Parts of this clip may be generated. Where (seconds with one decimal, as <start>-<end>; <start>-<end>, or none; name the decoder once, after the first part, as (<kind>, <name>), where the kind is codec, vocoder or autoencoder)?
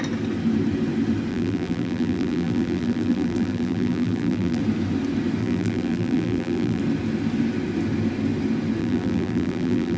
1.3-4.6 (vocoder, BigVGAN v2); 5.4-6.8; 8.8-10.0